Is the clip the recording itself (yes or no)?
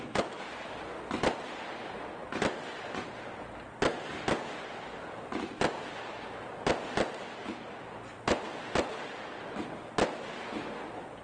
yes